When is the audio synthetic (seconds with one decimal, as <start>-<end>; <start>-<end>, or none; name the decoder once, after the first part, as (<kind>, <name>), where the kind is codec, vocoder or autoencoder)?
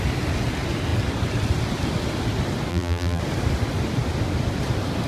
2.7-3.2 (vocoder, BigVGAN v2)